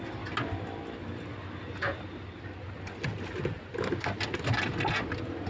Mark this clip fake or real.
real